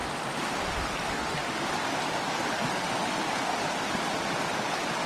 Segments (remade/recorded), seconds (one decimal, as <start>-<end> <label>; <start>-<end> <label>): 0.0-1.1 recorded; 1.1-1.7 remade; 1.7-5.1 recorded